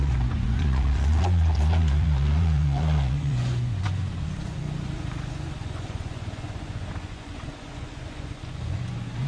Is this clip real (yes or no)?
no